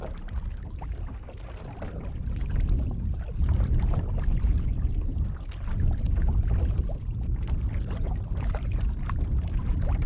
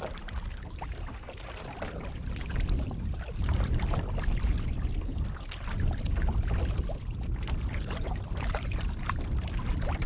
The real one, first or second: first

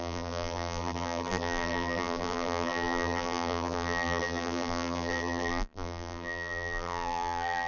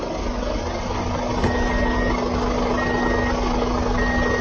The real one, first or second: second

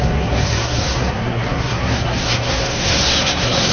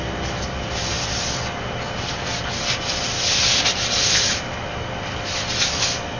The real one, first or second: second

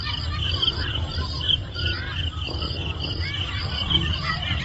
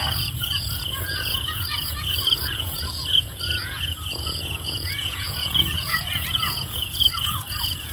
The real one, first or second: first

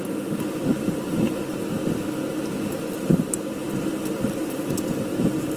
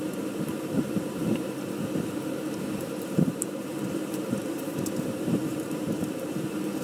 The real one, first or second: first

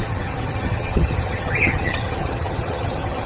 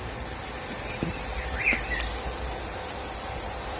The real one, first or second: second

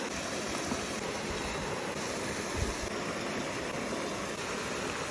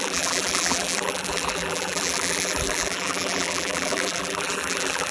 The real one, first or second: first